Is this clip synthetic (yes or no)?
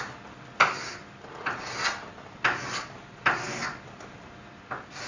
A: no